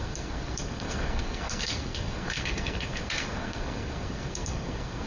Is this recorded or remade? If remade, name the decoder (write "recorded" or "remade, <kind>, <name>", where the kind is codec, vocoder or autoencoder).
remade, codec, SNAC